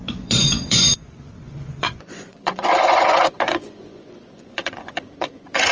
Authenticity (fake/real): fake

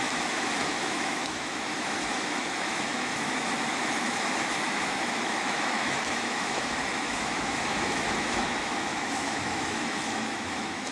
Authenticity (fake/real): fake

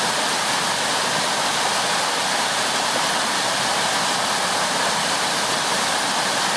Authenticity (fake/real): real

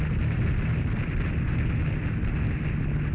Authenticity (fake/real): real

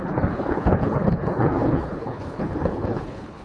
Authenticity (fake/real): fake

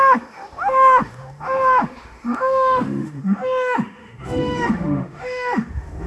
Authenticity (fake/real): fake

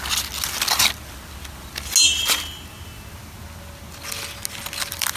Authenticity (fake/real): real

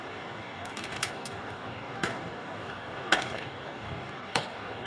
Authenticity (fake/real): fake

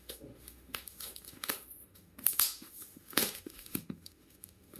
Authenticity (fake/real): fake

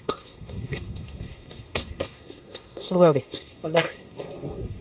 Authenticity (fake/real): fake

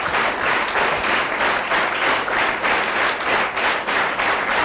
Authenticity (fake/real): real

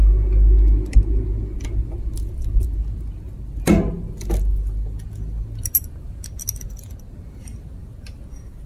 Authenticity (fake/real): real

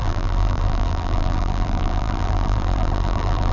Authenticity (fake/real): fake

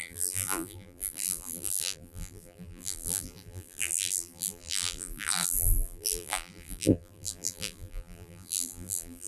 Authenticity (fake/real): fake